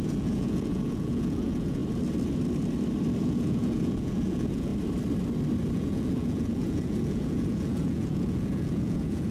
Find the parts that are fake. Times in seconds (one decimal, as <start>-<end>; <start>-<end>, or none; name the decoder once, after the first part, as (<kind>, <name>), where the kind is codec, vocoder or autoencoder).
0.0-1.8 (vocoder, Vocos); 3.2-4.7; 5.7-9.3